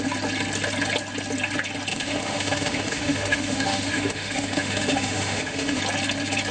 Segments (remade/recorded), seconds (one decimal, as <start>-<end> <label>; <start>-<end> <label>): 0.0-1.9 recorded; 1.9-5.8 remade; 5.8-6.5 recorded